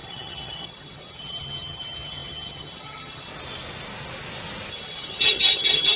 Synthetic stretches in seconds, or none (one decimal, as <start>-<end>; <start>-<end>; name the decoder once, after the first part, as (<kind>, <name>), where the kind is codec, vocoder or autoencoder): 0.0-3.3 (vocoder, HiFi-GAN); 4.7-6.0